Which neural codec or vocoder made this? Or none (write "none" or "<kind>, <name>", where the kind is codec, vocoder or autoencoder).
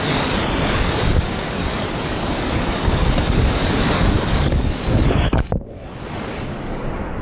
codec, DAC